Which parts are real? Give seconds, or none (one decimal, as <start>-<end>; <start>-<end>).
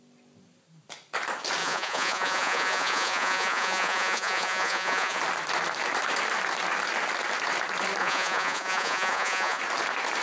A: 0.0-1.6; 5.2-8.0; 9.6-10.2